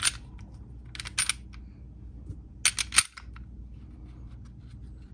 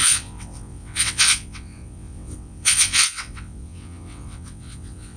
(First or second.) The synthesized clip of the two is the second